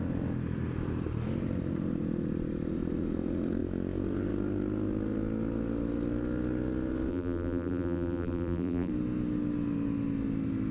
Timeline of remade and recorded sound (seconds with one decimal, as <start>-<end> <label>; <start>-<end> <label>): 0.0-7.1 recorded; 7.1-8.9 remade; 8.9-10.7 recorded